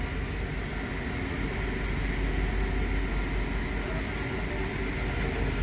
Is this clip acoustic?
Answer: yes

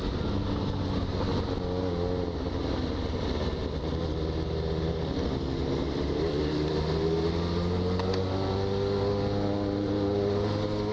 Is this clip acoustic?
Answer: yes